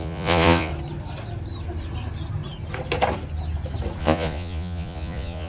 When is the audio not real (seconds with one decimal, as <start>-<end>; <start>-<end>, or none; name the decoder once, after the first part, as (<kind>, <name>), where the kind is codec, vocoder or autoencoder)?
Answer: 0.0-0.7 (vocoder, Vocos); 4.0-5.5